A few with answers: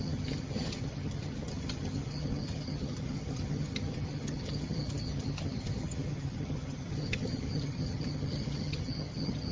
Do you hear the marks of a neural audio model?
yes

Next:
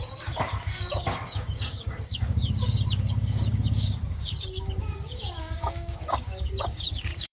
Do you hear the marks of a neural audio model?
yes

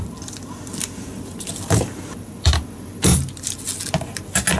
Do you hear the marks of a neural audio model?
no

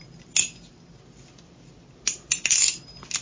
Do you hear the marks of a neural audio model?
no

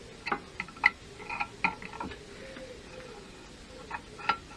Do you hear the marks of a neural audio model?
no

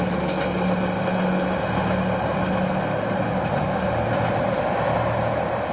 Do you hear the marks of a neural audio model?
no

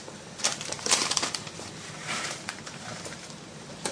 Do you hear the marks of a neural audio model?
yes